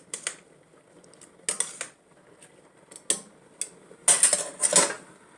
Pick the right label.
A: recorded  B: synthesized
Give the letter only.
A